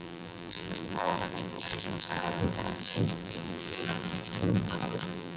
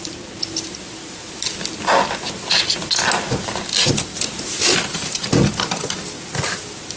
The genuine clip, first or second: second